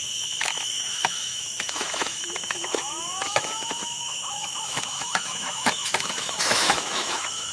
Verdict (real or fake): fake